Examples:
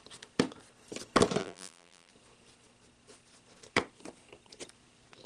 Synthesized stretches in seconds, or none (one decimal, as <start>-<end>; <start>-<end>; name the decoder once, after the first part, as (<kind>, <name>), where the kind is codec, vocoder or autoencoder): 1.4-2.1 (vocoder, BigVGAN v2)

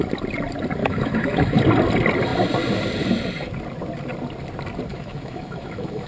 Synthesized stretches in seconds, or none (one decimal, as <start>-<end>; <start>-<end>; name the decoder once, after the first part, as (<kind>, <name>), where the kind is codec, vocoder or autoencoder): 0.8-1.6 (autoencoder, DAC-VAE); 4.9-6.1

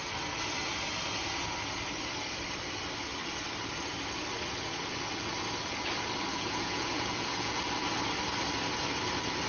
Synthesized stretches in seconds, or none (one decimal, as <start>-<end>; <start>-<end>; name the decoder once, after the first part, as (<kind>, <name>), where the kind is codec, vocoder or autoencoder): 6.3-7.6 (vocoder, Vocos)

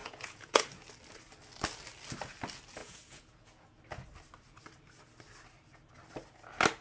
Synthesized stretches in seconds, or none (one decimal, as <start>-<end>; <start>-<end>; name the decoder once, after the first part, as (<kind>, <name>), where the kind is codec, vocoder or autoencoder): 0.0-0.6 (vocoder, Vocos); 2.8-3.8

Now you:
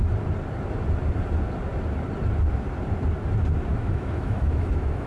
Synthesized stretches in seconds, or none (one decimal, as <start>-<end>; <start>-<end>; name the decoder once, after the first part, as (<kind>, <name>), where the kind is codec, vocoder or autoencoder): 3.7-5.1 (autoencoder, DAC-VAE)